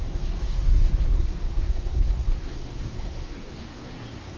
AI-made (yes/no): yes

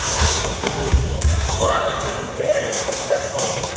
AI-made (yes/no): yes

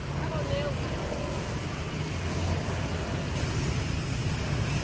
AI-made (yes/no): no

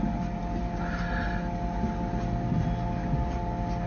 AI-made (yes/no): no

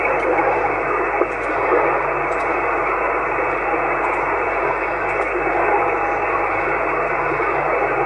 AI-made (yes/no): no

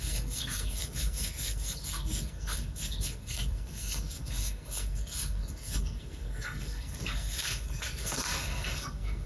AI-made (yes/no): yes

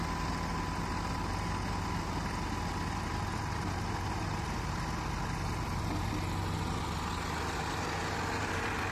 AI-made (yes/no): no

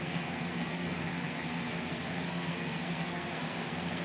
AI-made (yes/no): yes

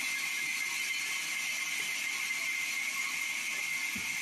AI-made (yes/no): no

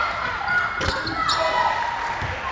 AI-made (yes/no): no